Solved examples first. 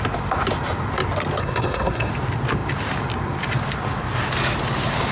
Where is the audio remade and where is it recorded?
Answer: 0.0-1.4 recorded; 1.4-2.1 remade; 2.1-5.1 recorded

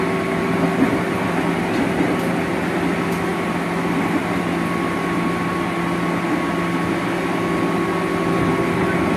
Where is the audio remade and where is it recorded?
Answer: 0.0-9.2 recorded

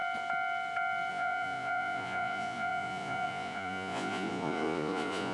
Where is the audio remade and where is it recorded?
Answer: 0.0-1.1 recorded; 1.1-5.3 remade

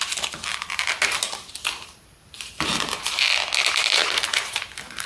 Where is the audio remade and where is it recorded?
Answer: 0.0-0.5 recorded; 0.5-3.2 remade; 3.2-3.8 recorded; 3.8-5.1 remade

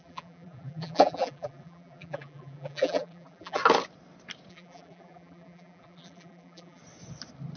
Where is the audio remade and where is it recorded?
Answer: 0.0-3.6 remade; 3.6-4.5 recorded; 4.5-6.8 remade; 6.8-7.6 recorded

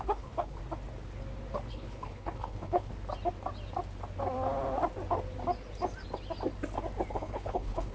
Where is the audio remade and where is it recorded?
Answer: 0.0-0.6 remade; 0.6-1.7 recorded; 1.7-2.9 remade; 2.9-7.1 recorded; 7.1-7.9 remade

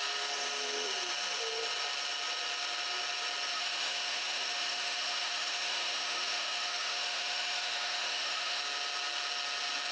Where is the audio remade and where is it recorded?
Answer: 0.0-3.5 recorded; 3.5-8.6 remade; 8.6-9.9 recorded